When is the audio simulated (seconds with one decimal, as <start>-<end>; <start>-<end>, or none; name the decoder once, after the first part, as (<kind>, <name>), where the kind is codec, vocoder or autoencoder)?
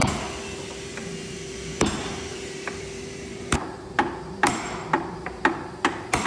0.0-1.5 (vocoder, BigVGAN v2); 2.3-6.3